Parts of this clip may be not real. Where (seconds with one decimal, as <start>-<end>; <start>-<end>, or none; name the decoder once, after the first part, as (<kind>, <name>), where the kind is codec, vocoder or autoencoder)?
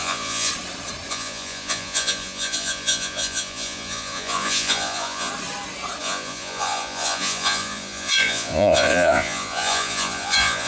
0.0-0.5 (vocoder, Vocos); 1.1-5.3; 6.0-10.7